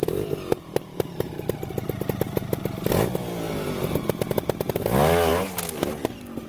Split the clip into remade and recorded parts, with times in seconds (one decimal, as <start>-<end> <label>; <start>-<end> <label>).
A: 0.0-6.5 recorded